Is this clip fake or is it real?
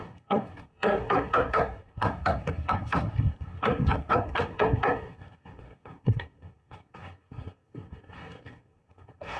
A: fake